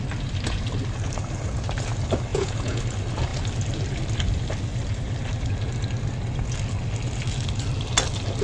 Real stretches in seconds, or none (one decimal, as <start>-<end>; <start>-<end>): 0.0-2.3; 2.8-8.4